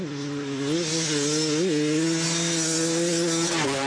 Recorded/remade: recorded